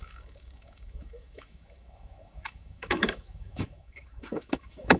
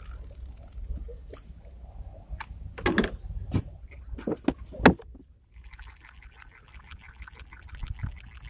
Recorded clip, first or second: second